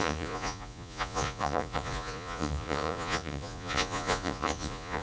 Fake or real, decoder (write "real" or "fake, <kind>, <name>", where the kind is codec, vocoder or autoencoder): fake, vocoder, Vocos